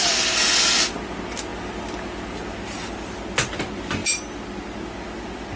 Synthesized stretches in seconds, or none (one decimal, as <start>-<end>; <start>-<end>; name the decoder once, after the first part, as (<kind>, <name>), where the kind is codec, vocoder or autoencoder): none